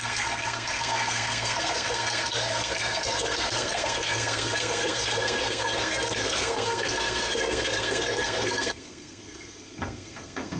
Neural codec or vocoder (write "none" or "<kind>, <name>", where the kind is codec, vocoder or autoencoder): codec, SNAC